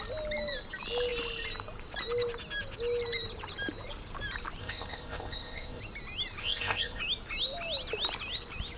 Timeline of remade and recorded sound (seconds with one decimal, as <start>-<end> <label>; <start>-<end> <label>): 0.0-4.6 recorded; 4.6-5.8 remade; 5.8-6.4 recorded; 6.4-7.0 remade; 7.0-8.8 recorded